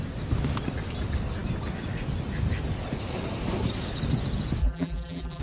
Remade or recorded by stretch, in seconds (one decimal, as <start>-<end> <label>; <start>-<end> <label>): 0.0-4.6 recorded; 4.6-5.4 remade